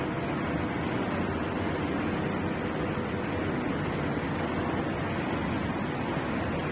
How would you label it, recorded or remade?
recorded